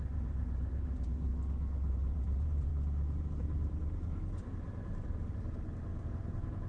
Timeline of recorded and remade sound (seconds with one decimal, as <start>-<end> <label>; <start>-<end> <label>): 0.0-1.3 remade; 1.3-1.9 recorded; 1.9-2.7 remade; 2.7-3.4 recorded; 3.4-6.7 remade